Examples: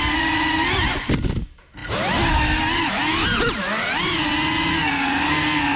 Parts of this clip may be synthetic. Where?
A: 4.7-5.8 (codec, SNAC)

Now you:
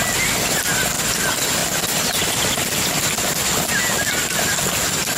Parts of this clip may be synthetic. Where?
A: none

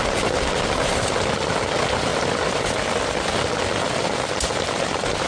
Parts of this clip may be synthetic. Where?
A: none

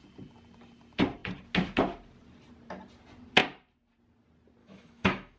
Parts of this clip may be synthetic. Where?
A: 4.6-5.4 (autoencoder, DAC-VAE)

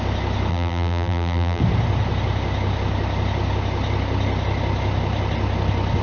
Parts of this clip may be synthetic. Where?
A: 0.5-1.6 (vocoder, BigVGAN v2)